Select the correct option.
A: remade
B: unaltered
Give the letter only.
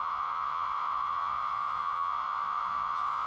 A